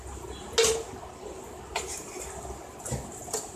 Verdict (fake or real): real